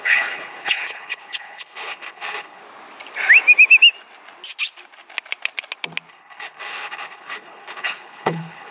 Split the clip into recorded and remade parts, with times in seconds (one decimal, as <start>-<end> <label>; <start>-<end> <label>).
0.0-2.6 remade; 2.6-6.1 recorded; 6.1-8.7 remade